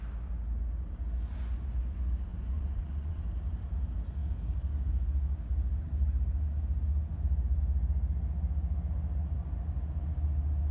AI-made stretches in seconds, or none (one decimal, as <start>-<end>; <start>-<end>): 2.3-3.2